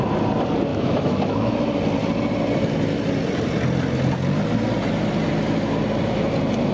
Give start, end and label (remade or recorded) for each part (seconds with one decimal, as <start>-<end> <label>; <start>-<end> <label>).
0.0-0.7 recorded; 0.7-1.5 remade; 1.5-6.7 recorded